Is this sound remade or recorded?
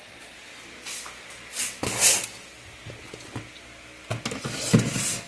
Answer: recorded